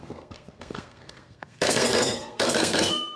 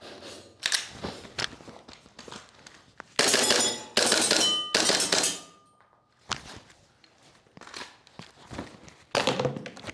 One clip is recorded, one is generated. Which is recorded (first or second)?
second